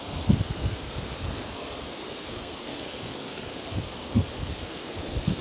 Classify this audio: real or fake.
fake